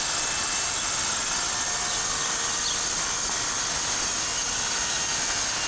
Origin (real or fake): real